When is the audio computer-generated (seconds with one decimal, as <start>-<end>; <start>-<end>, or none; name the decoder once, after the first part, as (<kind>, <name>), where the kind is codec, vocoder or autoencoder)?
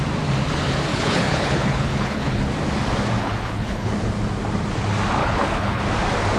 0.9-2.5 (codec, HILCodec); 3.2-3.9; 5.2-5.8